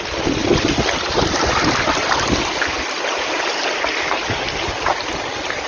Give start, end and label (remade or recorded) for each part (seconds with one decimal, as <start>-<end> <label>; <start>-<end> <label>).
0.0-5.7 recorded